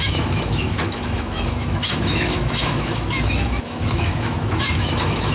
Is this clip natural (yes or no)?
no